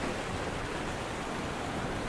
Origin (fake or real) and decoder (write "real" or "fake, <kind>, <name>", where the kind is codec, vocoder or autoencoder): real